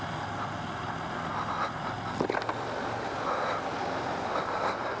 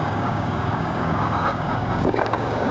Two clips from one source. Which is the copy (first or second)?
second